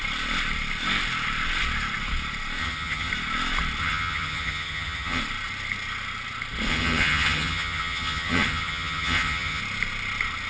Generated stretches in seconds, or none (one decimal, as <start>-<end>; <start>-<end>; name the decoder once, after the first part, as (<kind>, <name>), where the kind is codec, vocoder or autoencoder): 2.6-3.1 (vocoder, HiFi-GAN); 3.8-5.2; 6.7-9.6